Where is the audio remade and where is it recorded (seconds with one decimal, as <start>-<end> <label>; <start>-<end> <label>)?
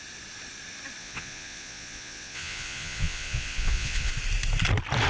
0.0-1.0 recorded; 1.0-4.1 remade; 4.1-5.1 recorded